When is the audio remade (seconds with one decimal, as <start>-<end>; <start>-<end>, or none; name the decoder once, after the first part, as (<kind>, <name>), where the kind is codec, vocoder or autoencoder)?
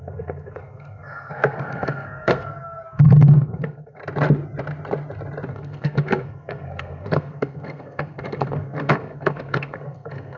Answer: 0.0-4.0 (codec, SNAC); 5.5-10.4